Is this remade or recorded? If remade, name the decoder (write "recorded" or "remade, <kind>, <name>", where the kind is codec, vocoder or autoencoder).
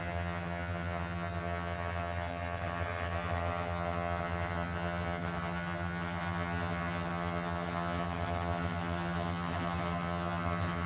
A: remade, vocoder, HiFi-GAN